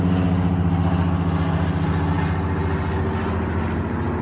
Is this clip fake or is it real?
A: real